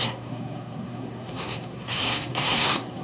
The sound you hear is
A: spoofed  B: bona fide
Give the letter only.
A